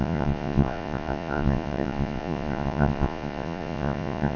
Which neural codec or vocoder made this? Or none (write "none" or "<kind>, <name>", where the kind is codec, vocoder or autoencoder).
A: vocoder, Vocos